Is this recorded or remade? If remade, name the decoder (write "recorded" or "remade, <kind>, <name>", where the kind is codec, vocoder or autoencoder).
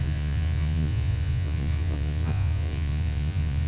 remade, vocoder, Vocos